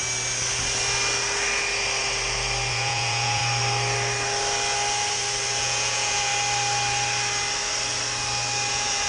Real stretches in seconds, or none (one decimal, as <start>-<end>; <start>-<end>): 0.0-2.7; 3.4-5.6; 6.3-8.7